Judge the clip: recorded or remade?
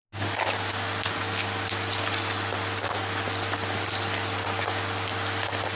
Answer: recorded